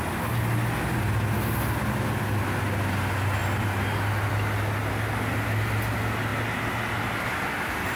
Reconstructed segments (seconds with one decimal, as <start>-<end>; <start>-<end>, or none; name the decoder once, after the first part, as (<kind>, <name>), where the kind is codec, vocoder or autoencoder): none